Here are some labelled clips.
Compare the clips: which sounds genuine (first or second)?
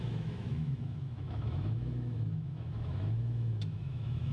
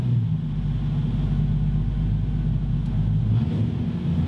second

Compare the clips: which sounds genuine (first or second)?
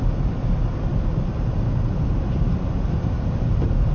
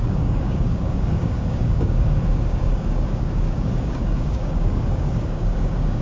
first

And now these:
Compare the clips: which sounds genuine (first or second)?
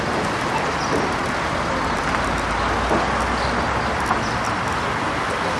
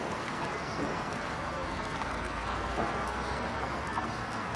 first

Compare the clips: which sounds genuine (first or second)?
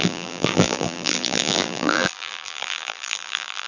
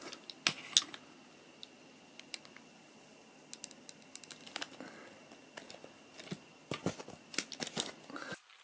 second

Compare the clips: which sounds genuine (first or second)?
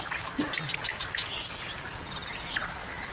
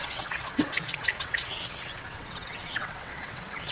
first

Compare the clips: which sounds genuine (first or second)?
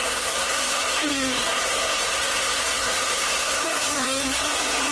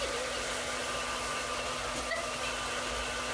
second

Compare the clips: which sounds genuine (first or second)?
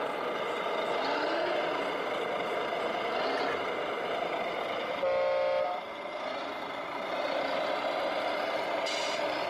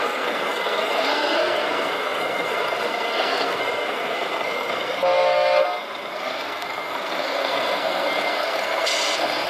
first